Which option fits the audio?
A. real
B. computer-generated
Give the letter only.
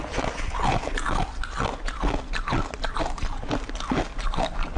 A